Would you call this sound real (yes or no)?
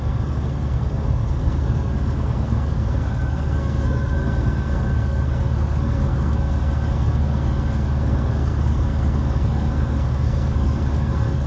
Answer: no